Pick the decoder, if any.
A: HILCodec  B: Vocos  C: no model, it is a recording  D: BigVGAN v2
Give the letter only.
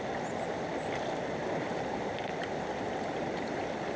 C